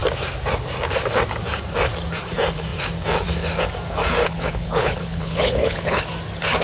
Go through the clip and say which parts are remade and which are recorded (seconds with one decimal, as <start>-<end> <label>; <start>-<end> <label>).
0.0-4.2 recorded; 4.2-6.0 remade; 6.0-6.6 recorded